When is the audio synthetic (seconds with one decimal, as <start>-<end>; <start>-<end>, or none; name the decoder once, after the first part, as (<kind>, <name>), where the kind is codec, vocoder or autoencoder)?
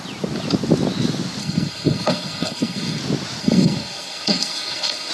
1.4-3.0 (codec, SNAC); 3.4-5.1